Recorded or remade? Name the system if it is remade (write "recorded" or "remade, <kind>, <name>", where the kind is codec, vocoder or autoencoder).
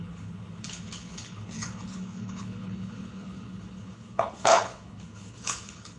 remade, codec, HILCodec